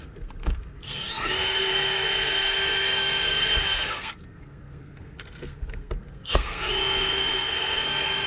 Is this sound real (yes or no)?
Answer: no